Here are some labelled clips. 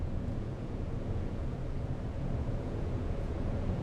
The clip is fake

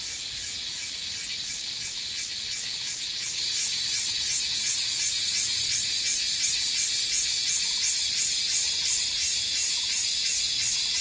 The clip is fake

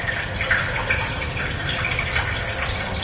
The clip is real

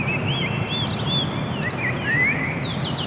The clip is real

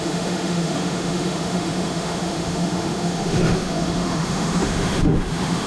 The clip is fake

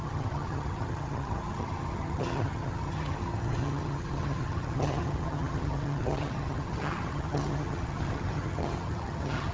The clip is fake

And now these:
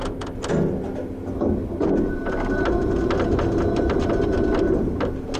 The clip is real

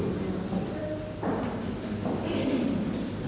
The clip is real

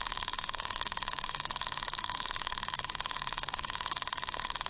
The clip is fake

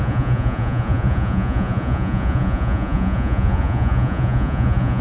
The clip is fake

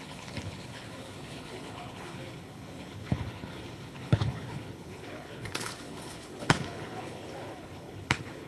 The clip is fake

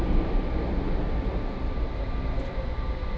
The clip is real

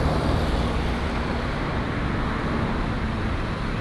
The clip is real